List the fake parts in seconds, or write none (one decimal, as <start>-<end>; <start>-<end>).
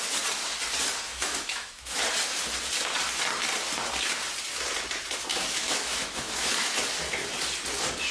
1.1-2.0; 5.3-6.8